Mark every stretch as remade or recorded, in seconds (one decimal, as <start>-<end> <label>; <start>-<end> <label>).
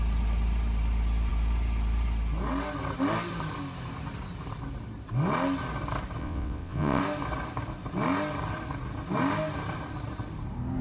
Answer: 0.0-6.2 recorded; 6.2-7.0 remade; 7.0-10.8 recorded